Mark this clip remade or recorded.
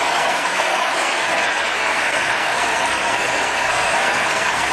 remade